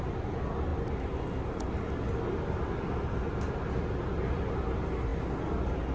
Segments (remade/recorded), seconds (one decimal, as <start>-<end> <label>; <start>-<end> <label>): 0.0-5.9 recorded